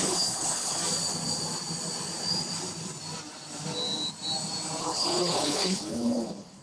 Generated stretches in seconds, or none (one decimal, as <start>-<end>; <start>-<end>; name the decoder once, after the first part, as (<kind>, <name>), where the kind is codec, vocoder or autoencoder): 0.0-0.8 (codec, HILCodec); 4.8-6.6